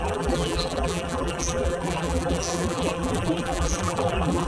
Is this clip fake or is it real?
fake